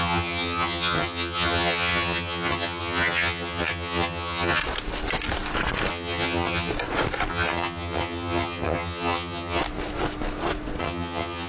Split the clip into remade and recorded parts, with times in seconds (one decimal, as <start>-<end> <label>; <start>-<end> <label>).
0.0-4.6 remade; 4.6-5.9 recorded; 5.9-6.7 remade; 6.7-7.3 recorded; 7.3-9.6 remade; 9.6-10.8 recorded; 10.8-11.5 remade